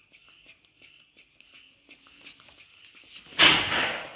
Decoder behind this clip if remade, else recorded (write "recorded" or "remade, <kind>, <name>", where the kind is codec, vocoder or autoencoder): recorded